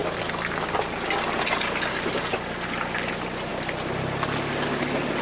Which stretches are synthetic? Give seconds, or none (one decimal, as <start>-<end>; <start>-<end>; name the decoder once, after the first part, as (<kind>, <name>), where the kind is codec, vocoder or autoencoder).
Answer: none